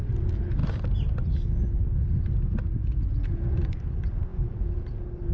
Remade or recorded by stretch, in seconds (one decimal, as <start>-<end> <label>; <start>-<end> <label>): 0.0-2.8 recorded; 2.8-3.7 remade; 3.7-4.3 recorded; 4.3-4.8 remade; 4.8-5.3 recorded